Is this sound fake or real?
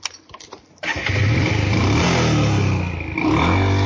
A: real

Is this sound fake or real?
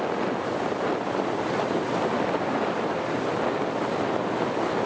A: real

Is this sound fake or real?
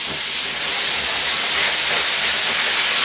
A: real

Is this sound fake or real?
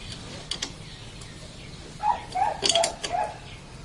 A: real